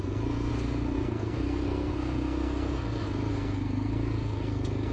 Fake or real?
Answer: fake